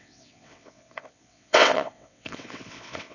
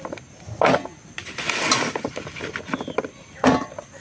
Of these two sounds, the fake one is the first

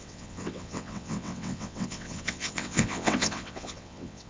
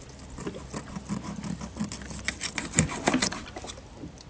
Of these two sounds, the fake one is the first